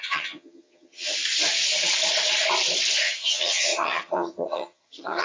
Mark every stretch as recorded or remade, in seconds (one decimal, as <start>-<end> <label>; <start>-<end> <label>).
0.0-1.1 remade; 1.1-3.0 recorded; 3.0-5.2 remade